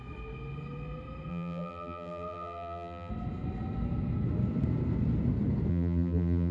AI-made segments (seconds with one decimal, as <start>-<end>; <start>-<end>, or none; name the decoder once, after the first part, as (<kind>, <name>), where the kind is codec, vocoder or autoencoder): 1.3-3.1 (vocoder, BigVGAN v2); 5.7-6.5